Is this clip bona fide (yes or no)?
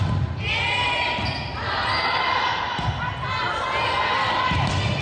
yes